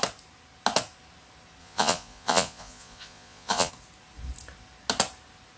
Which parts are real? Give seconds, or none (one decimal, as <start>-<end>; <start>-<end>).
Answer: 0.0-1.6; 3.7-5.6